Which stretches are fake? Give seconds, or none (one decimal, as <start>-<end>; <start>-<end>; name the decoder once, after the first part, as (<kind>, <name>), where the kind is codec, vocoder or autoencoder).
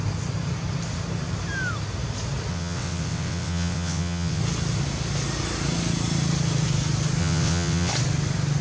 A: 2.5-4.4 (vocoder, WaveNeXt); 7.2-7.9